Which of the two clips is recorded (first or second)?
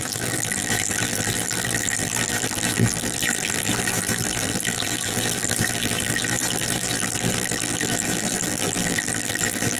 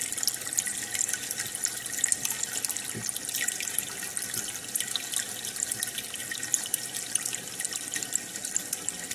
second